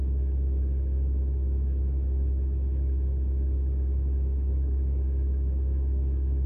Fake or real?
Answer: fake